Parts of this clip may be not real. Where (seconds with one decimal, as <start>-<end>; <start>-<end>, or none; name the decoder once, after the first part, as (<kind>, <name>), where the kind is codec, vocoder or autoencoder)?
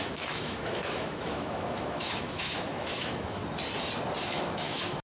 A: 0.0-3.4 (autoencoder, DAC-VAE); 4.2-5.0